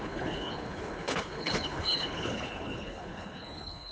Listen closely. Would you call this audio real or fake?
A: fake